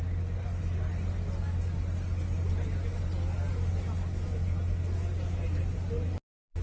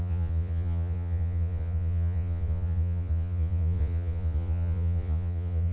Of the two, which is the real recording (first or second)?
first